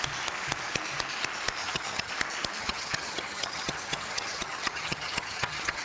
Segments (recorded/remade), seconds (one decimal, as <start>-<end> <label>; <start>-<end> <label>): 0.0-1.6 recorded; 1.6-2.1 remade; 2.1-2.6 recorded; 2.6-5.8 remade